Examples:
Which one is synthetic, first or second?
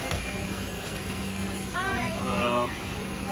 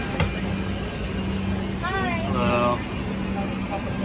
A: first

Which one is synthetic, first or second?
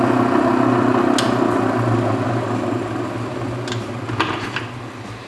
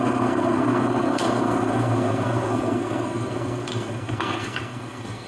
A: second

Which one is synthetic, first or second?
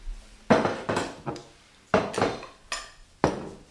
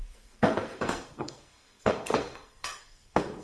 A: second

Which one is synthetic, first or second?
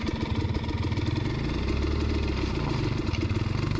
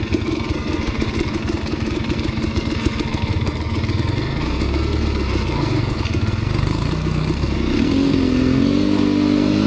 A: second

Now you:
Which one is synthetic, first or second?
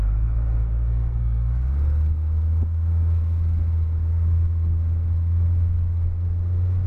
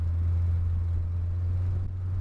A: first